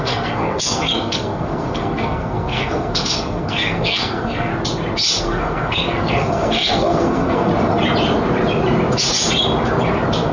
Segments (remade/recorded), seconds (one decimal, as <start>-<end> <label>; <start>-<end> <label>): 0.0-4.5 remade; 4.5-5.2 recorded; 5.2-7.5 remade; 7.5-10.3 recorded